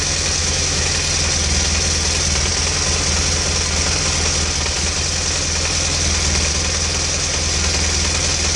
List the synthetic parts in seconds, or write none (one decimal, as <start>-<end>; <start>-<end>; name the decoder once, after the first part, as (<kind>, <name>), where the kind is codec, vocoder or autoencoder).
0.4-0.9 (autoencoder, DAC-VAE)